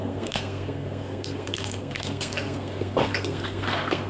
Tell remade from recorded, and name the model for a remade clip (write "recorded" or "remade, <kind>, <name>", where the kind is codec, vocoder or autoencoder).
remade, codec, SNAC